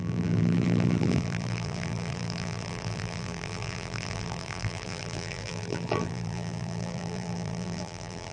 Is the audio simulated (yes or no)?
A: yes